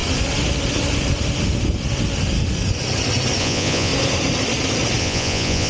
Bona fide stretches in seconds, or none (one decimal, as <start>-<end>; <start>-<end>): 0.0-3.4; 3.9-5.0